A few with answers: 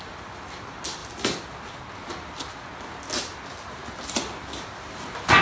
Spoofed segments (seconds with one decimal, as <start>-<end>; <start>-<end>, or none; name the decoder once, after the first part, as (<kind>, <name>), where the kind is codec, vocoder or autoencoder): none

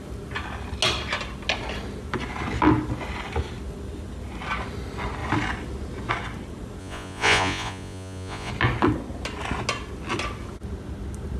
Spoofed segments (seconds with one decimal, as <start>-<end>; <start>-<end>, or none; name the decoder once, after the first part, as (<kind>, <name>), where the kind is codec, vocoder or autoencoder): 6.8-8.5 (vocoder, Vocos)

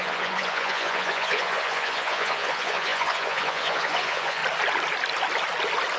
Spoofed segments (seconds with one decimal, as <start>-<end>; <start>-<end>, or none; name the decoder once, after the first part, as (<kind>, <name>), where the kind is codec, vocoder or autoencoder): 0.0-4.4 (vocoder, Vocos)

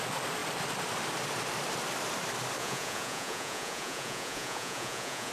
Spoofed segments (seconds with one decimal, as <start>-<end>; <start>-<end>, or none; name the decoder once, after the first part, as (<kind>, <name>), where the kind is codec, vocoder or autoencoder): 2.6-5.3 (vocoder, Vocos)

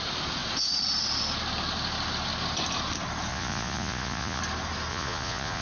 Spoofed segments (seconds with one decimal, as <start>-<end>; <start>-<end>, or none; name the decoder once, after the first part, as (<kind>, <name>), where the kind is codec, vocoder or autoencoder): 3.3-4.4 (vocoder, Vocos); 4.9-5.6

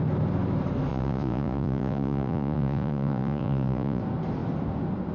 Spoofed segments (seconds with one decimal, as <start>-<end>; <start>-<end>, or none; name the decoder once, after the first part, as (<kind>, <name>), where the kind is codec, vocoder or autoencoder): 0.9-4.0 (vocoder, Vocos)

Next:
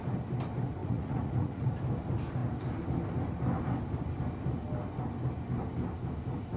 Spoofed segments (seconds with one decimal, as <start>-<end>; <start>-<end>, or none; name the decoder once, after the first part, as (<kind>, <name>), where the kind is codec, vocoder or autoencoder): 0.8-1.7 (vocoder, Vocos)

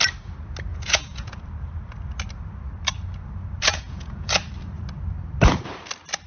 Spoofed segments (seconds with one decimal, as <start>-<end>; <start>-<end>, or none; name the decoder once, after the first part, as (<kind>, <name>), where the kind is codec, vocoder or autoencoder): 0.7-1.4 (vocoder, Vocos); 3.7-4.4